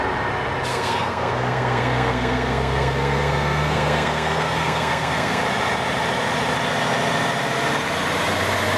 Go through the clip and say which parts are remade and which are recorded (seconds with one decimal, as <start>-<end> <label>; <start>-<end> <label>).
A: 0.0-0.7 recorded; 0.7-5.4 remade; 5.4-8.8 recorded